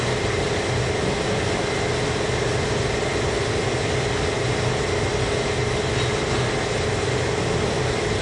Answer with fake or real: real